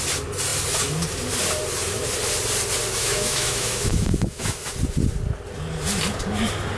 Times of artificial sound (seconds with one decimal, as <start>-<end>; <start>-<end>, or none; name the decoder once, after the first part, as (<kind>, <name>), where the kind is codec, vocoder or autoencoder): 3.0-4.7 (autoencoder, DAC-VAE)